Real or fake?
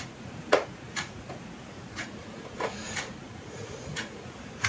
fake